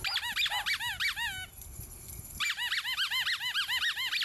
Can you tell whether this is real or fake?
real